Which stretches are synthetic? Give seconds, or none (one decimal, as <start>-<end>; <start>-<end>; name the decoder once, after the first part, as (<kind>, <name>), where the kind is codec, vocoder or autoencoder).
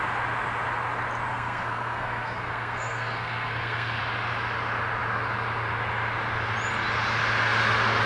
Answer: 1.3-4.0 (codec, SNAC)